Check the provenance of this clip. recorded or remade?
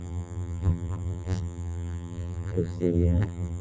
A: remade